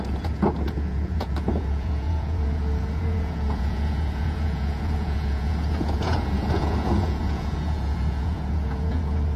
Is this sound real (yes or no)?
no